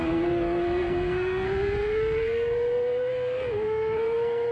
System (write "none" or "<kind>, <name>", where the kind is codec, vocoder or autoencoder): codec, SNAC